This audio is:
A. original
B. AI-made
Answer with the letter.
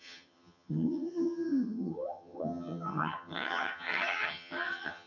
B